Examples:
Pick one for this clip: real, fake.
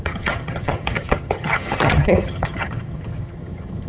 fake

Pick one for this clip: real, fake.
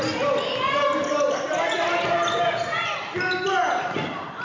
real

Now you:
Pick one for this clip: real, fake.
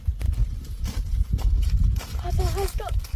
real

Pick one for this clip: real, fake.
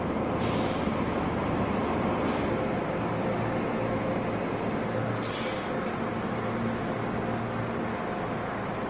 real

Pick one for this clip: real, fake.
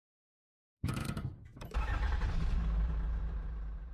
fake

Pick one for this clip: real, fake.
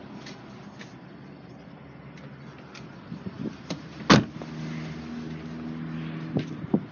real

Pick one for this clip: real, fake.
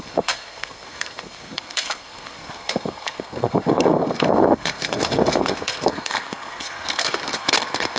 fake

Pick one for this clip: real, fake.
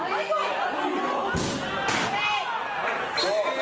real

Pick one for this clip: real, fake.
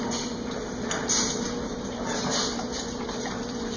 fake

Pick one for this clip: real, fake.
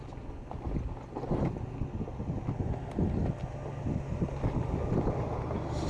real